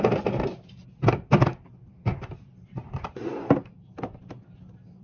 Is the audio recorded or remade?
remade